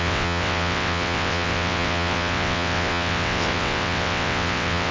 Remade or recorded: remade